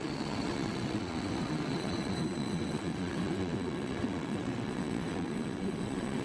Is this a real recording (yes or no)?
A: no